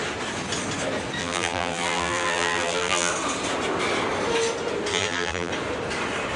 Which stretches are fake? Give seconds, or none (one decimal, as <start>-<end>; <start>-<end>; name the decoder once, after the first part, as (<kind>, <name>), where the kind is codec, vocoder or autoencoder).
1.2-3.1 (vocoder, BigVGAN v2); 4.9-5.5